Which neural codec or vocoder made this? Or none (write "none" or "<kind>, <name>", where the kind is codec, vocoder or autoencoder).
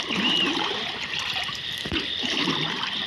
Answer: vocoder, BigVGAN v2